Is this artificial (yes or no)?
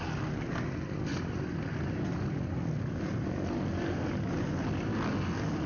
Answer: no